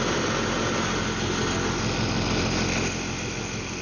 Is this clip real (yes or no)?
yes